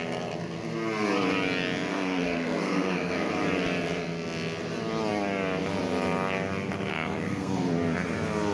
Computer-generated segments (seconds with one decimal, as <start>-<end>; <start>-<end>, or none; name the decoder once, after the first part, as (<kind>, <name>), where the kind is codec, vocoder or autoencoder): 1.9-3.3 (codec, SNAC); 6.9-7.7